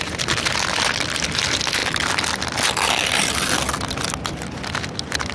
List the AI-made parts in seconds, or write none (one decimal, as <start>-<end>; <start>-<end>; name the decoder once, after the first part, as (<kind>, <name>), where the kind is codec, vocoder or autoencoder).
none